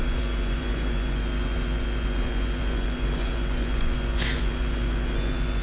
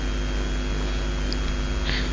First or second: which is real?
second